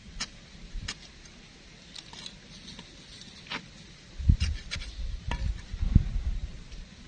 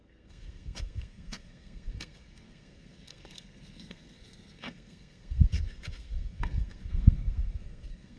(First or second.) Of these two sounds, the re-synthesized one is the second